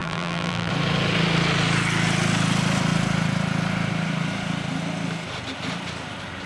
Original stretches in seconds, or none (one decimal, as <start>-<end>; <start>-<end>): 0.7-6.5